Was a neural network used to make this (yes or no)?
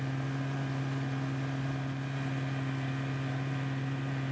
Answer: no